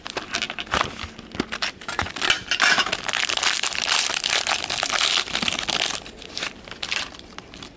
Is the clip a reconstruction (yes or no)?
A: no